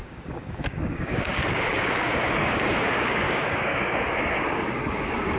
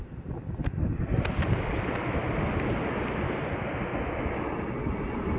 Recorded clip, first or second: second